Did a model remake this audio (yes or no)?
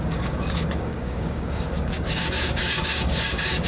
yes